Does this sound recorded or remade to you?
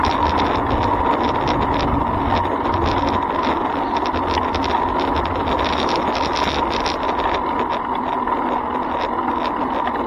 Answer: recorded